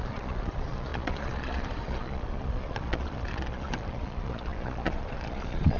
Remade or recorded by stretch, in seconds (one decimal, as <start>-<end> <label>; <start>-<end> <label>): 0.0-5.8 remade